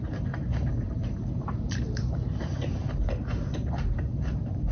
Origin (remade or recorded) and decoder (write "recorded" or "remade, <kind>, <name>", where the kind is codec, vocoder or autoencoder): remade, vocoder, BigVGAN v2